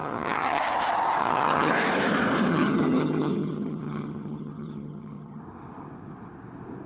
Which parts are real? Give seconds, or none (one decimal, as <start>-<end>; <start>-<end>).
0.6-1.2; 1.7-2.5; 5.4-6.9